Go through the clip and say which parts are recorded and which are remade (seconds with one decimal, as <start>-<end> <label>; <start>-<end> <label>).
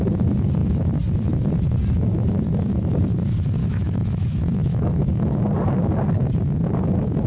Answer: 0.0-3.6 recorded; 3.6-5.4 remade; 5.4-7.3 recorded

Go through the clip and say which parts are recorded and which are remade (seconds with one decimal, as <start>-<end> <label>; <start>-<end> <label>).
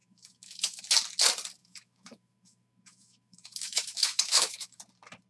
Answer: 0.0-0.8 remade; 0.8-1.6 recorded; 1.6-4.8 remade; 4.8-5.3 recorded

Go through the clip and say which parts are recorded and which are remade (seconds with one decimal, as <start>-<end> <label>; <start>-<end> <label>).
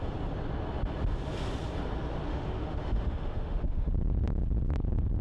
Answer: 0.0-2.3 recorded; 2.3-3.9 remade; 3.9-5.2 recorded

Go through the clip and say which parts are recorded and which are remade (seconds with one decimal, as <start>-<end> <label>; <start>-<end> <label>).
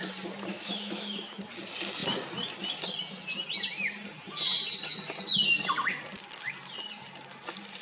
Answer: 0.0-0.5 recorded; 0.5-1.4 remade; 1.4-7.8 recorded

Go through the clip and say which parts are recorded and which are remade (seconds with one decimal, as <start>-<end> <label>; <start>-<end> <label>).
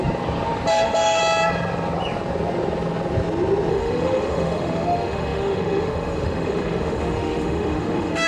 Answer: 0.0-0.7 recorded; 0.7-1.2 remade; 1.2-3.7 recorded; 3.7-8.3 remade